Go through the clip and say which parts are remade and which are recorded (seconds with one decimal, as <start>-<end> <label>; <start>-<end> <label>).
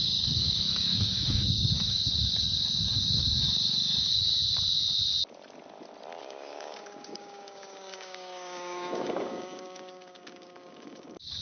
0.0-4.3 remade; 4.3-6.2 recorded; 6.2-11.4 remade